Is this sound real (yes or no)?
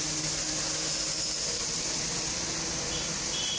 yes